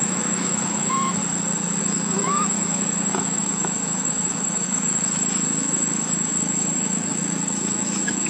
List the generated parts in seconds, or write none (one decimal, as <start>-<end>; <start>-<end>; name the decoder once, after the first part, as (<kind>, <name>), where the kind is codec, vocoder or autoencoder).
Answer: 0.0-1.2 (autoencoder, DAC-VAE); 1.8-8.3